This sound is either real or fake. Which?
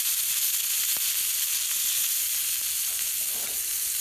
real